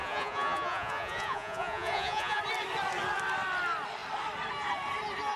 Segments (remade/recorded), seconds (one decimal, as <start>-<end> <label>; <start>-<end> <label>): 0.0-2.4 remade; 2.4-5.4 recorded